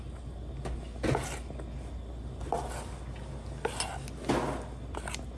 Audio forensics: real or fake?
real